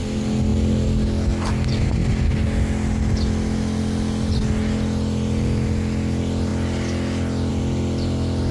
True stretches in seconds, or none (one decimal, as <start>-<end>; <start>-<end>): 0.0-8.5